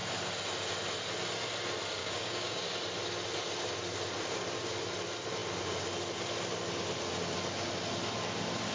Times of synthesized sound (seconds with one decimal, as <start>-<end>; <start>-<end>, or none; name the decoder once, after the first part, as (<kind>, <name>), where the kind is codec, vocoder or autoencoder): 2.0-2.6 (codec, DAC)